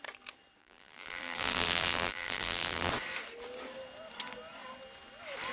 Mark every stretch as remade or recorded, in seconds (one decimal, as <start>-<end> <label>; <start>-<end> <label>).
0.0-0.6 recorded; 0.6-2.9 remade; 2.9-5.5 recorded